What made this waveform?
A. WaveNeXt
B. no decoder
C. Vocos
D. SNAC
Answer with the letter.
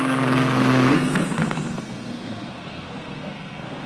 D